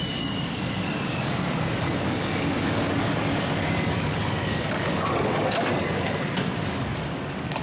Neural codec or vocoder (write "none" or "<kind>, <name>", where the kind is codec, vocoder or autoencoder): codec, DAC